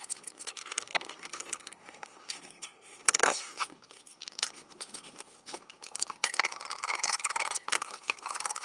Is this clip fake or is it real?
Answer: fake